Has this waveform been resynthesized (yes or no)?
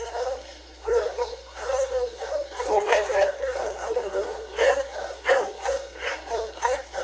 yes